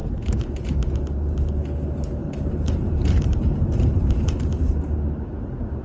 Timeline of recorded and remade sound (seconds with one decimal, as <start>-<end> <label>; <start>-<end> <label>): 0.0-2.2 recorded; 2.2-4.8 remade; 4.8-5.8 recorded